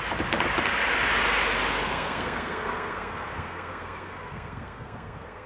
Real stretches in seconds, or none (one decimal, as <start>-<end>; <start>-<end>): 0.0-1.9